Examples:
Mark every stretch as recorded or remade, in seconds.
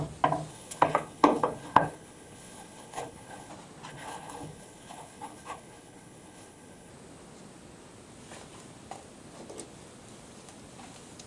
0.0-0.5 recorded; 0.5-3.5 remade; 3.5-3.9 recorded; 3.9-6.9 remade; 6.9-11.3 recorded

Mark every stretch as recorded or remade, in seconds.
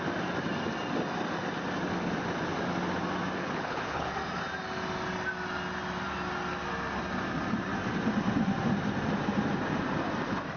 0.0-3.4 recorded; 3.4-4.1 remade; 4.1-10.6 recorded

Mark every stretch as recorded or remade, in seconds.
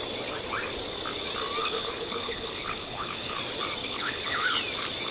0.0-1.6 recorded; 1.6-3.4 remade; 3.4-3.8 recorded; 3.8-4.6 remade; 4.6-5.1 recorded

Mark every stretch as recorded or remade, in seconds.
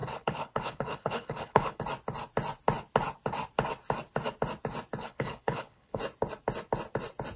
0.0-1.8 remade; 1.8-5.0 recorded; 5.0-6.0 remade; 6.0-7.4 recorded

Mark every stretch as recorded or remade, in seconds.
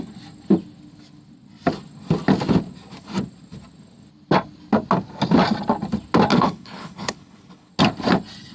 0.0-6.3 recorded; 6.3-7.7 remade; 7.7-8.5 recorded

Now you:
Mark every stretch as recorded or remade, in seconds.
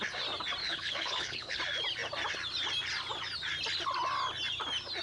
0.0-0.6 recorded; 0.6-1.6 remade; 1.6-5.0 recorded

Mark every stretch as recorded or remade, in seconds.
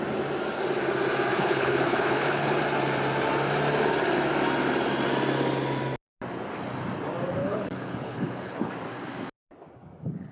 0.0-1.3 recorded; 1.3-2.6 remade; 2.6-7.4 recorded; 7.4-8.7 remade; 8.7-10.3 recorded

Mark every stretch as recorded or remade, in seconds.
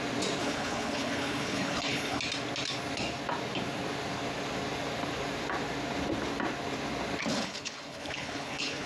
0.0-0.4 recorded; 0.4-2.2 remade; 2.2-7.3 recorded; 7.3-8.9 remade